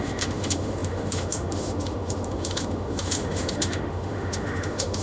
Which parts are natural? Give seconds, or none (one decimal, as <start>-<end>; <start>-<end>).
none